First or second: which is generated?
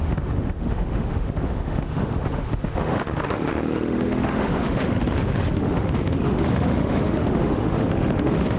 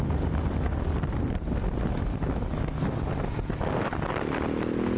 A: first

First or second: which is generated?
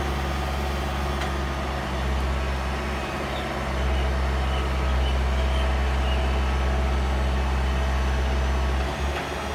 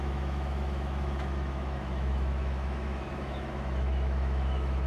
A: second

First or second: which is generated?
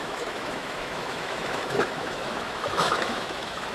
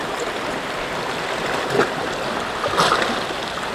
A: first